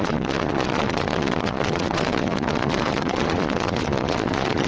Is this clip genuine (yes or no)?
no